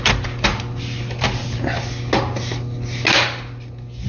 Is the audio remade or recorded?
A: recorded